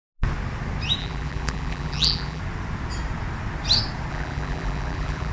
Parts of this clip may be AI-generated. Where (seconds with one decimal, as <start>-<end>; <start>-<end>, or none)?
1.0-2.4; 4.1-5.3